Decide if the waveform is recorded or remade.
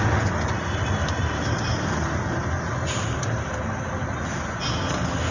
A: recorded